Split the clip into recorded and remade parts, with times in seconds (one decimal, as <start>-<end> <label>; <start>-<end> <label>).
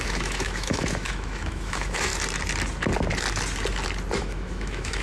0.0-2.1 remade; 2.1-4.2 recorded; 4.2-5.0 remade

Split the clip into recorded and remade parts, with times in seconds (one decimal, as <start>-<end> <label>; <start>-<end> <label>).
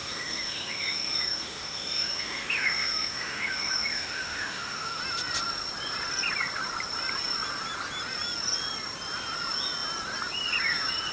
0.0-5.0 remade; 5.0-11.1 recorded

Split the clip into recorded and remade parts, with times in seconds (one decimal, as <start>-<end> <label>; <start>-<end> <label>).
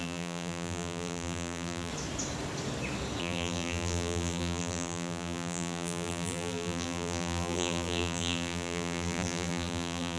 0.0-1.9 remade; 1.9-3.2 recorded; 3.2-10.2 remade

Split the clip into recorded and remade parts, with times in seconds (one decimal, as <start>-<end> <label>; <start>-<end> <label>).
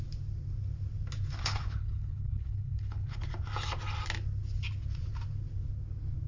0.0-1.4 recorded; 1.4-3.2 remade; 3.2-6.3 recorded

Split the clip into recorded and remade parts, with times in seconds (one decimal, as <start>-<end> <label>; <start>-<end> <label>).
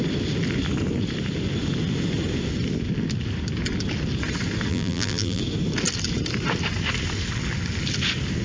0.0-4.7 recorded; 4.7-5.4 remade; 5.4-8.4 recorded